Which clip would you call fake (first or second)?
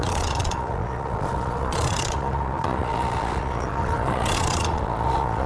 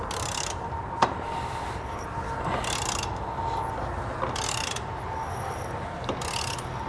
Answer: first